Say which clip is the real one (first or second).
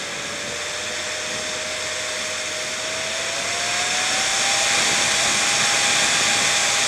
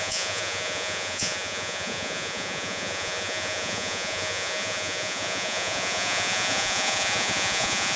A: first